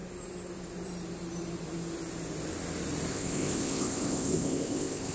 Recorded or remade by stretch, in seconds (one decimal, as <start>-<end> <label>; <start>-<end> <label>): 0.0-3.1 recorded; 3.1-5.1 remade